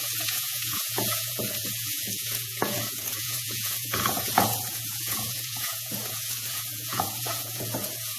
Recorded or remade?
remade